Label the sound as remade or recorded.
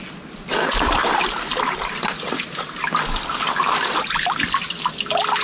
recorded